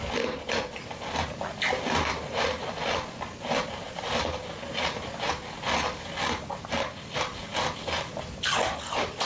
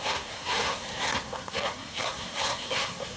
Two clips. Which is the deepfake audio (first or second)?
second